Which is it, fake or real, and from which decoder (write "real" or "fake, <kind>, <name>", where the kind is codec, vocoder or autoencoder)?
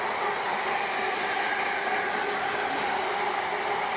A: real